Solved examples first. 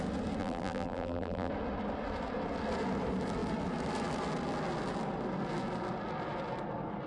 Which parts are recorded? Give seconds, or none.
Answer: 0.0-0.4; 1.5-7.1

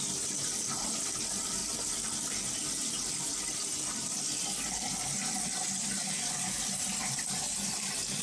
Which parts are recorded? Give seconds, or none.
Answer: 1.6-3.1

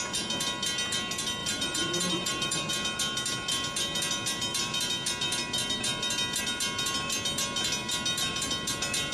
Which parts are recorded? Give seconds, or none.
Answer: 0.0-1.4; 2.7-9.1